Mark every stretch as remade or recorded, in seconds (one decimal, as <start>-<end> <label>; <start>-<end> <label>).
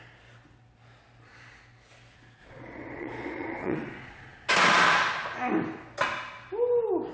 0.0-2.4 recorded; 2.4-4.5 remade; 4.5-7.1 recorded